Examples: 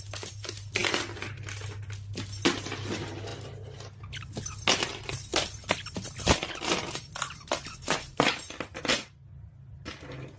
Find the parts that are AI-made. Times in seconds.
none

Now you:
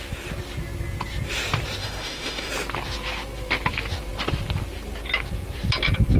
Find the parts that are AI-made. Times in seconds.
1.8-2.5 (autoencoder, DAC-VAE)

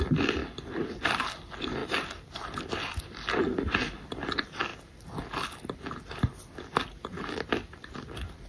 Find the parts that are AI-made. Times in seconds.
0.0-0.4 (vocoder, BigVGAN v2); 1.0-4.7; 7.5-8.5

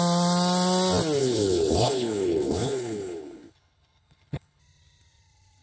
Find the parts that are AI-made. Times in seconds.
1.2-4.6 (codec, HILCodec)

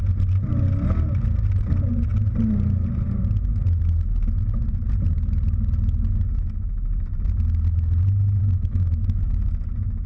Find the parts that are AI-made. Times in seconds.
8.4-9.2 (autoencoder, DAC-VAE)